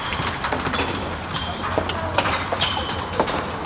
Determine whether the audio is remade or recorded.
remade